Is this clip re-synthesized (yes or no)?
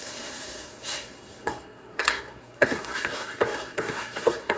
yes